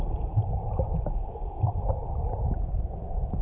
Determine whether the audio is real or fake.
real